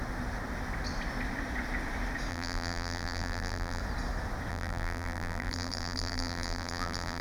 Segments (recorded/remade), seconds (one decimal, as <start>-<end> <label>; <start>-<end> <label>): 0.0-2.3 recorded; 2.3-3.8 remade; 3.8-4.5 recorded; 4.5-7.2 remade